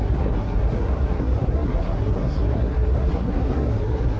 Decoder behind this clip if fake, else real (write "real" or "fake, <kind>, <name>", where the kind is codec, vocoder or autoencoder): fake, codec, SNAC